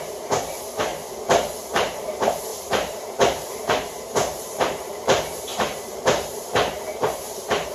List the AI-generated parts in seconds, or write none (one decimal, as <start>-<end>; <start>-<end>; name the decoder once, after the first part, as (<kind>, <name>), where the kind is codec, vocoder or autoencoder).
0.0-0.9 (vocoder, BigVGAN v2); 1.7-7.7